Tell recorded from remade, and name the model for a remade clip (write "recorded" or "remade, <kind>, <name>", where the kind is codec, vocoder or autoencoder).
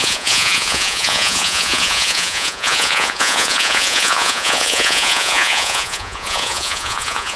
remade, vocoder, Vocos